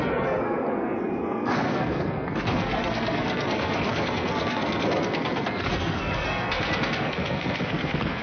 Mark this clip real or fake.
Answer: fake